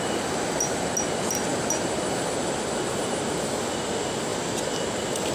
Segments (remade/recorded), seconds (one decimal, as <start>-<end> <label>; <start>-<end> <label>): 0.0-5.3 recorded